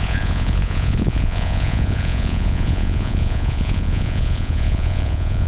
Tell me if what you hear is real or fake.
fake